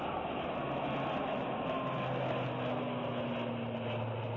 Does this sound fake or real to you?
real